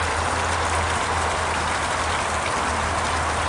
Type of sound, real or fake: real